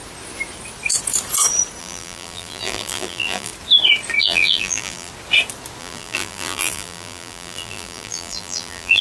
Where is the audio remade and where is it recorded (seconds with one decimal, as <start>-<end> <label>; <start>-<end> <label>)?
0.0-1.8 recorded; 1.8-3.5 remade; 3.5-4.2 recorded; 4.2-5.1 remade; 5.1-5.8 recorded; 5.8-9.0 remade